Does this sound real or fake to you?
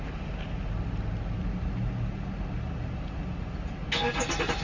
real